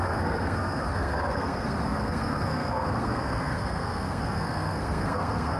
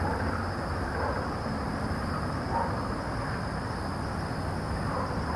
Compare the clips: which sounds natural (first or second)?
second